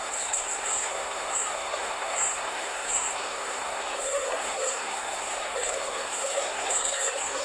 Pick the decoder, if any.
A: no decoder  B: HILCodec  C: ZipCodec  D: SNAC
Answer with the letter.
D